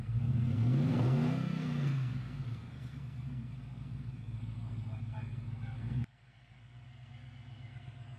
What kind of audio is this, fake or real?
fake